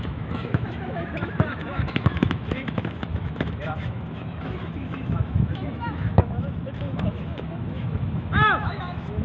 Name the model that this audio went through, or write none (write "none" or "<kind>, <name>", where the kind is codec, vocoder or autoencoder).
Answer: autoencoder, DAC-VAE